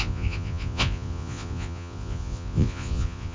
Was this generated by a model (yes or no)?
yes